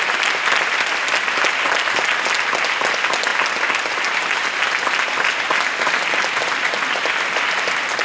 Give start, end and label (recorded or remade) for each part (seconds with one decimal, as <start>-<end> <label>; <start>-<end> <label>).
0.0-8.0 recorded